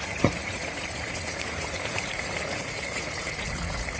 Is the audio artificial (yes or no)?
yes